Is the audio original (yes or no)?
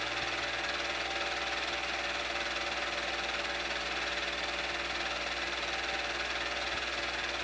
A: yes